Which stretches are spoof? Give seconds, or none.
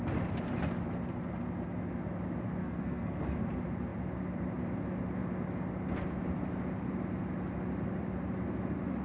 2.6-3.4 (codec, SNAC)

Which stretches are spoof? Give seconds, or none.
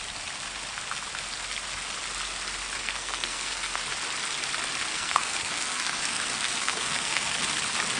2.8-3.8 (codec, SNAC); 4.9-7.4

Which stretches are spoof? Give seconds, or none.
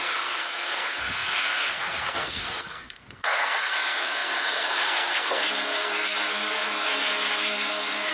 0.0-8.1 (codec, SNAC)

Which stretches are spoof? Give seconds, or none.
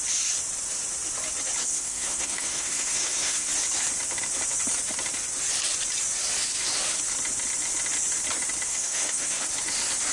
1.6-3.5 (codec, SNAC); 8.7-9.4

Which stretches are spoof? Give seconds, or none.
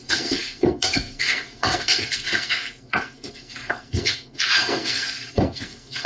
0.0-6.1 (codec, SNAC)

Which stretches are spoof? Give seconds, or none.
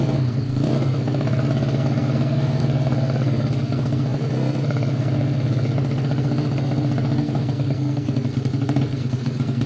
0.0-9.7 (codec, SNAC)